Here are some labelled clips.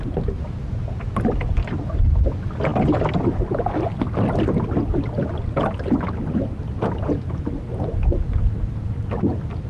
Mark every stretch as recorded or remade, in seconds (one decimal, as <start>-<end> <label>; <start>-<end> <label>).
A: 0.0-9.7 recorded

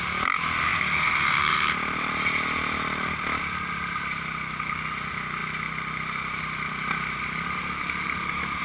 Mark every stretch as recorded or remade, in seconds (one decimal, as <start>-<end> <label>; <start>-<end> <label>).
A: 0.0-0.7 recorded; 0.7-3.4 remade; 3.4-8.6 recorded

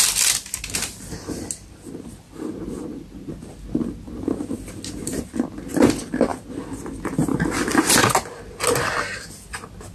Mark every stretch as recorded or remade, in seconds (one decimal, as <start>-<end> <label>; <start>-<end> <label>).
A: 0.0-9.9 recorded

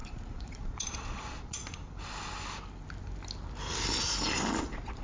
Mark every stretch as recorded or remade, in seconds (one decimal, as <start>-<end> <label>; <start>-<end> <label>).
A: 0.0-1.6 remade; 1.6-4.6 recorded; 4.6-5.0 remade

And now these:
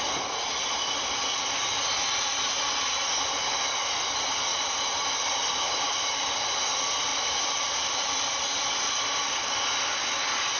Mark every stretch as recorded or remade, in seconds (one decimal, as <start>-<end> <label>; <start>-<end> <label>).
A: 0.0-4.5 recorded; 4.5-6.0 remade; 6.0-7.1 recorded; 7.1-8.4 remade; 8.4-10.6 recorded

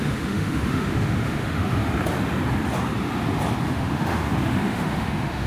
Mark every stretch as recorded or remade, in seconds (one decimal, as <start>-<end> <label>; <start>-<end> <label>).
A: 0.0-1.8 remade; 1.8-3.7 recorded; 3.7-5.5 remade

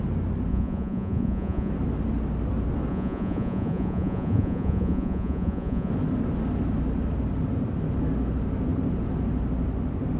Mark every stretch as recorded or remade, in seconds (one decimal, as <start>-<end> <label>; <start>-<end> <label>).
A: 0.0-0.5 recorded; 0.5-1.7 remade; 1.7-2.9 recorded; 2.9-5.9 remade; 5.9-10.2 recorded